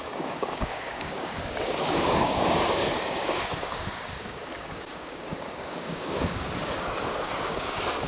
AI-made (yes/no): yes